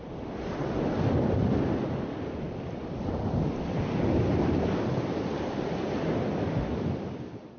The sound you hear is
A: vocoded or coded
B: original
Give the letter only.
B